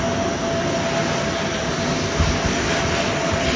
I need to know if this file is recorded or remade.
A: recorded